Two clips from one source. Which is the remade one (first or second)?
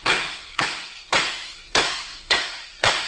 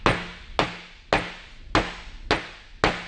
first